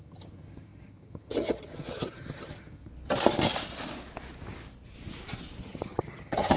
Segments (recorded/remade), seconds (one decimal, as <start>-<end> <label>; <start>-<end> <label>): 0.0-2.9 remade; 2.9-5.6 recorded; 5.6-6.6 remade